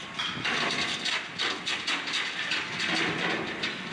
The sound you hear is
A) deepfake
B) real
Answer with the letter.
B